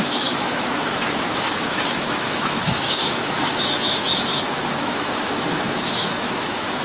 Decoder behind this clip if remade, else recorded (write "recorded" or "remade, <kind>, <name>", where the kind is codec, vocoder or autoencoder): remade, autoencoder, DAC-VAE